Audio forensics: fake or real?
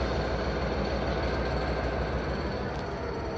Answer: real